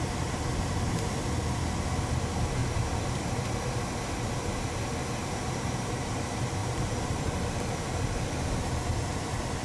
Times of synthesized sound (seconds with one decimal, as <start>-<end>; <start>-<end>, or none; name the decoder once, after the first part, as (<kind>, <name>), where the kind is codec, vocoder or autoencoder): 2.6-3.2 (vocoder, BigVGAN v2); 5.2-5.9; 6.6-7.7